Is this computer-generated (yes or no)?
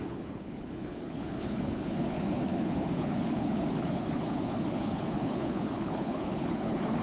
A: yes